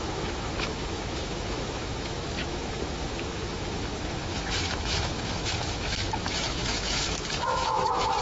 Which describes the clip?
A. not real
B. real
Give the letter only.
A